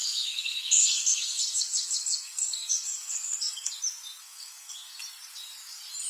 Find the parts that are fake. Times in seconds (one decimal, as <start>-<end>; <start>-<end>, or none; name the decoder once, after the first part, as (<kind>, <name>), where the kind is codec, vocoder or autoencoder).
0.0-3.7 (codec, SNAC); 4.2-5.0